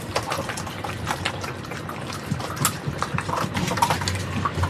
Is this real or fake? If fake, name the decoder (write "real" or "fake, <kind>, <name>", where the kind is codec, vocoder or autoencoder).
real